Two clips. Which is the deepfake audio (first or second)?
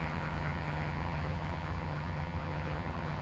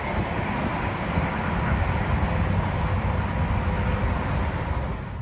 first